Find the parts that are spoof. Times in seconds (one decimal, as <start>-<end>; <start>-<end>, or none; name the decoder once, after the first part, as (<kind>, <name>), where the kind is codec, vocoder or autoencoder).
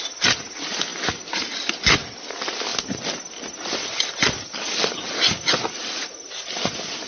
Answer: none